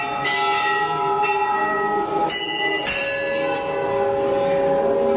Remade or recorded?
recorded